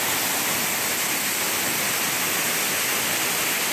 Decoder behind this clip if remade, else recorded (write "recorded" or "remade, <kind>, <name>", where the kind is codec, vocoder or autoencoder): recorded